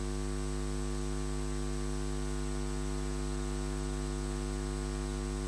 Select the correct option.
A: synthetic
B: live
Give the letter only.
B